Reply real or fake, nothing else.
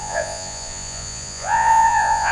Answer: fake